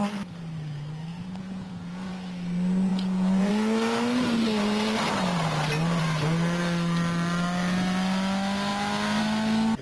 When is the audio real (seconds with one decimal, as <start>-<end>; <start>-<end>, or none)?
0.0-1.1; 2.1-2.9; 3.5-9.8